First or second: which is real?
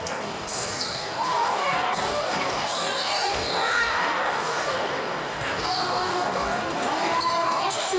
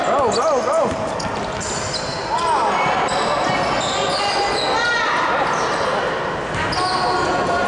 second